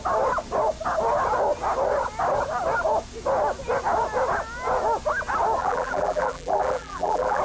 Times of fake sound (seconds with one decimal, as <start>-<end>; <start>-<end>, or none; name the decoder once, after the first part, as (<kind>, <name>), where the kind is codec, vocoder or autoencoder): 5.6-7.4 (vocoder, BigVGAN v2)